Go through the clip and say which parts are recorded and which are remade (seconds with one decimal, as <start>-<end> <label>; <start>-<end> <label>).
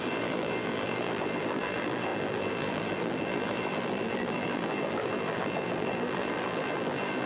0.0-7.3 remade